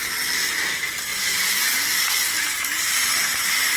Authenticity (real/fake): real